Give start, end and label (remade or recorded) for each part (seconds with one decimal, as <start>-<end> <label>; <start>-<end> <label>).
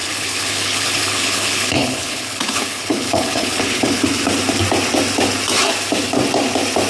0.0-4.0 remade; 4.0-6.9 recorded